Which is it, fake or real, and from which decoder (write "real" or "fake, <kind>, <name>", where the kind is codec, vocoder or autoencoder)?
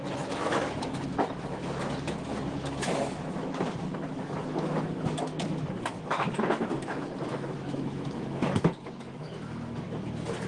fake, autoencoder, DAC-VAE